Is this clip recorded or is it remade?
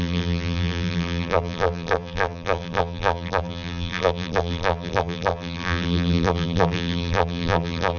remade